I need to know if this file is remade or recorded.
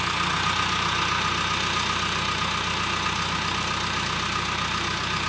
recorded